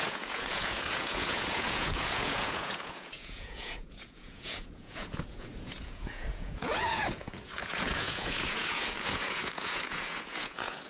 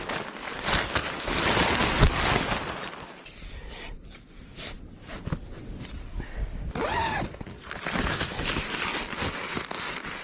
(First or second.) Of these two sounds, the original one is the second